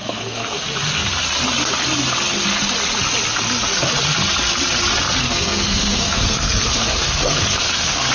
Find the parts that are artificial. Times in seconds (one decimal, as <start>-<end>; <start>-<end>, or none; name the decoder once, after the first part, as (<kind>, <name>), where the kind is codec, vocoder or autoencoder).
0.0-0.6 (codec, SNAC); 5.2-8.1